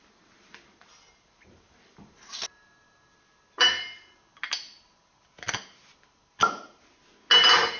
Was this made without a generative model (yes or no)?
yes